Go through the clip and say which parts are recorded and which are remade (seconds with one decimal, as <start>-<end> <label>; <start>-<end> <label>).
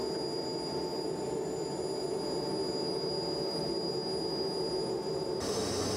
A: 0.0-6.0 recorded